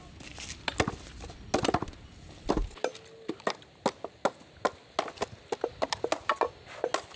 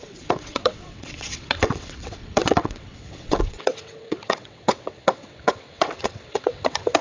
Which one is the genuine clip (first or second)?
first